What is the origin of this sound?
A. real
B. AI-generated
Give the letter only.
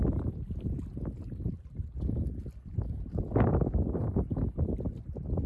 A